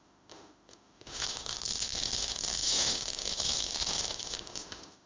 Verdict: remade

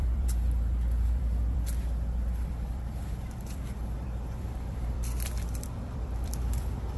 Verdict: remade